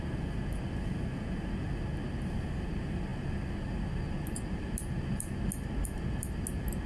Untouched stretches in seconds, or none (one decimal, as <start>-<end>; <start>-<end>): 0.0-6.9